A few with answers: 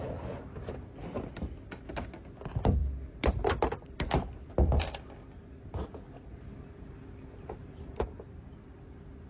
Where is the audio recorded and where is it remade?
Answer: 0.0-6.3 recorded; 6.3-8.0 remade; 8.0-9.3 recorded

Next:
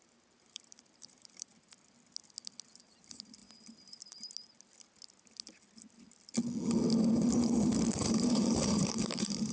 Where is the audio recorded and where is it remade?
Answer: 0.0-1.5 remade; 1.5-2.8 recorded; 2.8-3.4 remade; 3.4-7.9 recorded; 7.9-9.5 remade

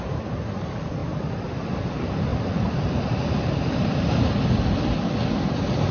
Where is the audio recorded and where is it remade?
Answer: 0.0-1.0 recorded; 1.0-1.7 remade; 1.7-2.3 recorded; 2.3-3.9 remade; 3.9-5.9 recorded

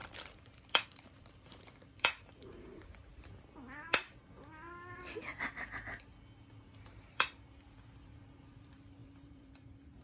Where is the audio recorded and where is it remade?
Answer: 0.0-3.1 remade; 3.1-6.7 recorded; 6.7-10.0 remade